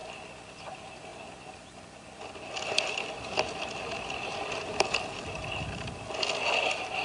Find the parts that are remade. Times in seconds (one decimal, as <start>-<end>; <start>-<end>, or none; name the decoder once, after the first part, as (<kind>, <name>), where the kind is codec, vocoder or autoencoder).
none

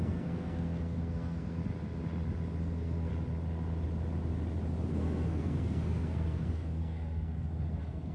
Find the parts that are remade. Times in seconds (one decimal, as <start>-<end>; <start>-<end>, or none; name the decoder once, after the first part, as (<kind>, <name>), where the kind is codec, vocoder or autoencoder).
0.0-1.6 (codec, SNAC); 2.6-3.1; 4.9-8.1

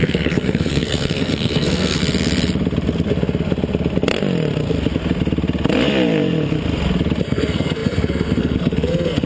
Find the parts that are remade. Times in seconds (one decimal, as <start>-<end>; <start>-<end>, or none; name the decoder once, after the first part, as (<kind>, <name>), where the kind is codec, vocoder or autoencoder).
0.0-2.0 (codec, SNAC); 7.2-9.3

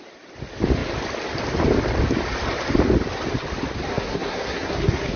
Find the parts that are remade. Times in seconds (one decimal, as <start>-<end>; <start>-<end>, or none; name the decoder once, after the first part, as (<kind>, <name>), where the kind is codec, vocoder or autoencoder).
3.9-5.2 (codec, SNAC)

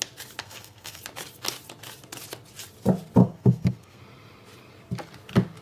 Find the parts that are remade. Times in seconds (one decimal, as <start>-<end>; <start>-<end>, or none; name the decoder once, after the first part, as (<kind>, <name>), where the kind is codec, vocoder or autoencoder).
0.4-1.0 (codec, SNAC); 3.2-4.0

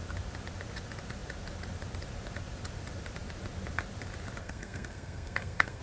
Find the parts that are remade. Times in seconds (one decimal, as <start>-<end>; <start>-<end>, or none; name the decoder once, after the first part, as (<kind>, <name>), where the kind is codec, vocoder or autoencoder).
4.4-5.8 (codec, SNAC)

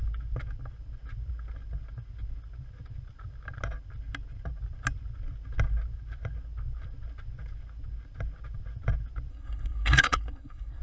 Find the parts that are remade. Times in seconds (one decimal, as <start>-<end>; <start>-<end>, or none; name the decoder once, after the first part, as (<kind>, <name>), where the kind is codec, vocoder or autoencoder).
9.3-10.8 (codec, SNAC)